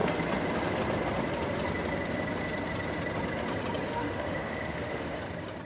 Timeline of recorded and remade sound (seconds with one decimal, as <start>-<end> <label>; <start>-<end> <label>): 0.0-3.9 recorded; 3.9-5.2 remade; 5.2-5.7 recorded

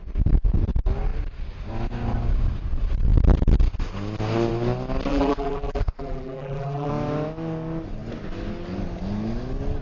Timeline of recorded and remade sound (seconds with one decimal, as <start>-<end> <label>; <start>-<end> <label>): 0.0-5.1 recorded; 5.1-6.9 remade; 6.9-9.8 recorded

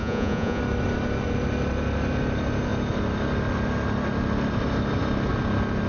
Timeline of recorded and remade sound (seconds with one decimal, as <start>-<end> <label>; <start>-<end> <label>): 0.0-0.6 remade; 0.6-5.9 recorded

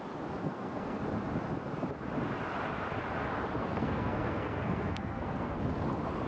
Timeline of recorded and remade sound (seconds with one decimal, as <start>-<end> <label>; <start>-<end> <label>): 0.0-0.4 recorded; 0.4-1.0 remade; 1.0-3.6 recorded; 3.6-5.6 remade; 5.6-6.3 recorded